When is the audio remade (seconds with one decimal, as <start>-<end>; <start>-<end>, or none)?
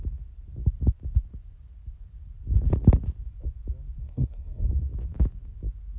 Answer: 4.0-4.7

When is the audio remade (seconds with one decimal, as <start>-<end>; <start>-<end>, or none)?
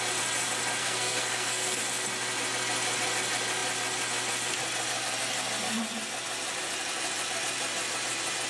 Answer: 0.8-1.8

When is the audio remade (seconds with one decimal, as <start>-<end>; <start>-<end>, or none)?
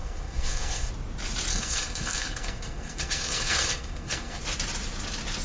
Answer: 0.0-0.9; 1.5-4.4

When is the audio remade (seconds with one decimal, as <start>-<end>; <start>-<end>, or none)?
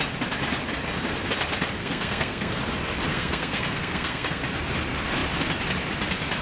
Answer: 1.8-2.6; 3.1-4.4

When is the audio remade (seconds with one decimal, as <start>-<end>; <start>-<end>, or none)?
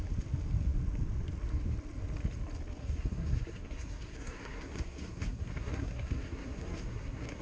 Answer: 2.8-7.4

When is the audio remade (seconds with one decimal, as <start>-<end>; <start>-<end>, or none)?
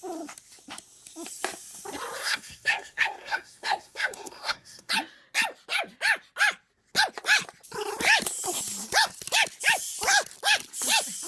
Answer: 2.2-4.9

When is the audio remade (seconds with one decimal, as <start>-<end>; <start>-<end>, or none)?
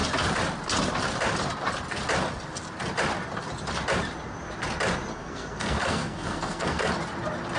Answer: 5.1-6.9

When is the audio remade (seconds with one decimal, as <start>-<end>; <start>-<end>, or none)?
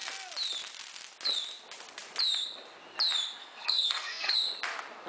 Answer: 3.4-4.3